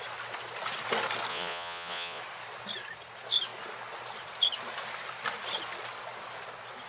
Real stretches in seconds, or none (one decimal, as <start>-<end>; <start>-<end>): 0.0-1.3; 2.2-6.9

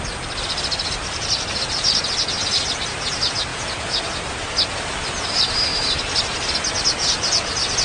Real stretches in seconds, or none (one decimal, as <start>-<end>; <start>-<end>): 0.0-3.5; 4.0-7.8

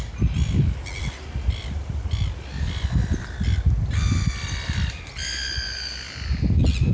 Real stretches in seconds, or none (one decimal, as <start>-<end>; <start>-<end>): 0.0-6.9